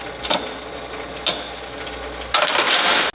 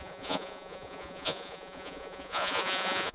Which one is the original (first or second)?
first